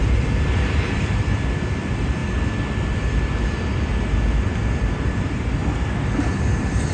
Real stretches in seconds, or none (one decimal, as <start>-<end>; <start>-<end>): 2.2-2.9; 3.9-4.4; 5.6-6.3